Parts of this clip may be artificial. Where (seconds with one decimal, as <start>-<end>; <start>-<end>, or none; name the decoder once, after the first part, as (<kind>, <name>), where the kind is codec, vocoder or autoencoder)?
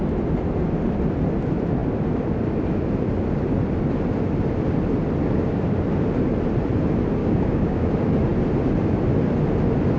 7.2-7.9 (codec, DAC)